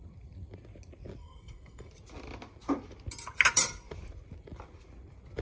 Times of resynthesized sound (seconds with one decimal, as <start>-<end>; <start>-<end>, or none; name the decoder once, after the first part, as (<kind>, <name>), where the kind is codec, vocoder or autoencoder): 1.2-1.9 (codec, SNAC)